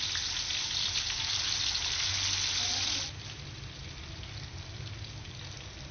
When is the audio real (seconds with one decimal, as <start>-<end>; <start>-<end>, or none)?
0.0-5.9